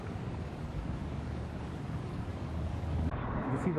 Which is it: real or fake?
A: fake